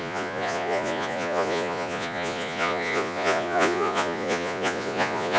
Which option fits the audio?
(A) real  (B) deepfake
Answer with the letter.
B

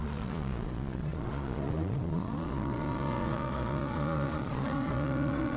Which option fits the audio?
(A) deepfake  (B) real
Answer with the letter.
A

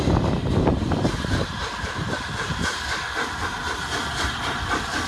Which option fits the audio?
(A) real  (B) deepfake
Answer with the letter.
A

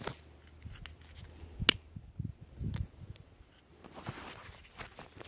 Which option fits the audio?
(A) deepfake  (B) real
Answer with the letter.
B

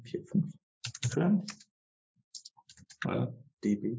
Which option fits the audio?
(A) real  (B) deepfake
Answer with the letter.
A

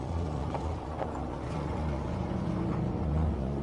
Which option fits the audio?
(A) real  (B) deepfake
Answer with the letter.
B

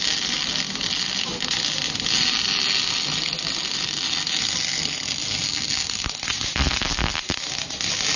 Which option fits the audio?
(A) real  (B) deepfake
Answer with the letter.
A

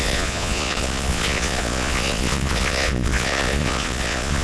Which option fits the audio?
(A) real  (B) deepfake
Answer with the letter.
B